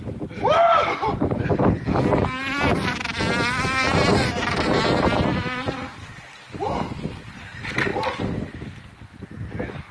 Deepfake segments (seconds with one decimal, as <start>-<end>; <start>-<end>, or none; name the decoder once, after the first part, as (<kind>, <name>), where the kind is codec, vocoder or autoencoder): none